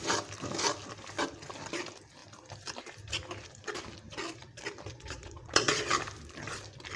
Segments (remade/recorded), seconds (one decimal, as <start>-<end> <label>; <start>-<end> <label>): 0.0-4.9 recorded; 4.9-5.9 remade; 5.9-7.0 recorded